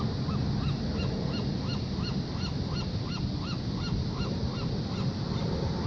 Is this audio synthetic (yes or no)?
no